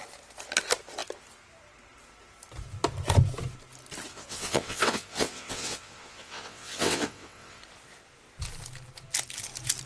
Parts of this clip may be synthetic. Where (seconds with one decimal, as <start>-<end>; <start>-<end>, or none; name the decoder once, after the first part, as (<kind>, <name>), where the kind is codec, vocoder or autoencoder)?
4.1-7.6 (vocoder, WaveNeXt)